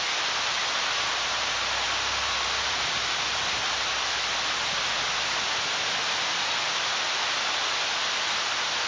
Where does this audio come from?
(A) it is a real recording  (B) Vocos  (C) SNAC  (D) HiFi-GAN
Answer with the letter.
A